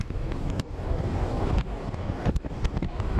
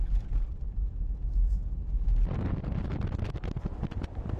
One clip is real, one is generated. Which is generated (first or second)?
first